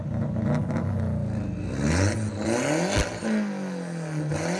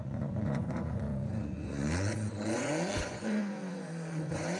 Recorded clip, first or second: first